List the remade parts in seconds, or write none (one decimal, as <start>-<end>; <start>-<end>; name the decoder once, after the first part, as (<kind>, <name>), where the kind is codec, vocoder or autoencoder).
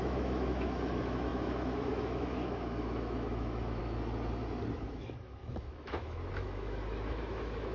0.0-3.8 (autoencoder, DAC-VAE); 4.9-7.7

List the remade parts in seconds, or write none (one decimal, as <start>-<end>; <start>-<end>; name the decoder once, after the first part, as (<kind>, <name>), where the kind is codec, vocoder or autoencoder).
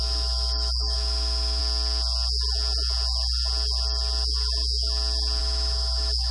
0.0-1.6 (autoencoder, DAC-VAE); 5.4-6.3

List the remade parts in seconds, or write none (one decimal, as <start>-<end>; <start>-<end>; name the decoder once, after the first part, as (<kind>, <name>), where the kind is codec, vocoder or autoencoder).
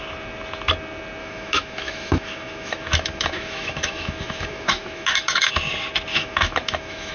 1.2-5.5 (autoencoder, DAC-VAE); 6.1-7.1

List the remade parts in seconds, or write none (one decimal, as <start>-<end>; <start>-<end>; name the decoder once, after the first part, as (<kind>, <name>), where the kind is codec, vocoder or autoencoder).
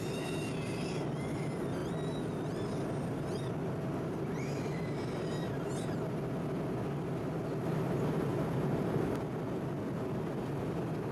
none